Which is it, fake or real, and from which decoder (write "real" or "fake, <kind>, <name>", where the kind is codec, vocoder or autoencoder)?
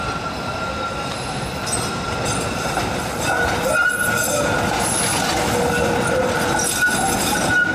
real